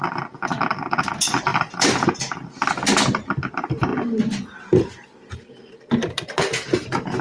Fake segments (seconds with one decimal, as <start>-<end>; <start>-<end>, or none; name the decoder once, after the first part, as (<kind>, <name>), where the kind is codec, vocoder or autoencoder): none